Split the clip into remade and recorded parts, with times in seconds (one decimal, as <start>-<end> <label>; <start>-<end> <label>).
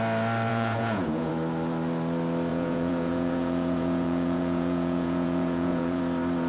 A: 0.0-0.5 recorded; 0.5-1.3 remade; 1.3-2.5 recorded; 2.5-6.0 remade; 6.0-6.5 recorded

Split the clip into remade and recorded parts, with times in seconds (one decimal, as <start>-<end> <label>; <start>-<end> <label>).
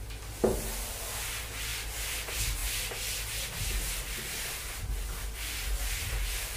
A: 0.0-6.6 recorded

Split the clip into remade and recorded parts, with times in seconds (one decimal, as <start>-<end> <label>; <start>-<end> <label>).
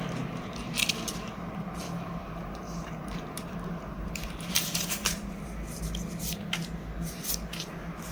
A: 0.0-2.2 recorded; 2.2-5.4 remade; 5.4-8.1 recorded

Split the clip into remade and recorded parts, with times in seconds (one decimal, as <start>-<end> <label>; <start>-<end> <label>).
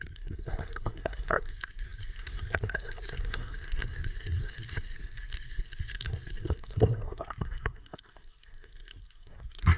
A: 0.0-9.8 remade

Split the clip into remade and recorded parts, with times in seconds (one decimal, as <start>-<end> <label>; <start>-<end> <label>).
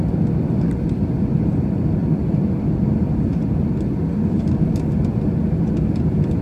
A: 0.0-6.4 recorded